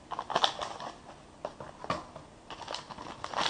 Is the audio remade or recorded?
recorded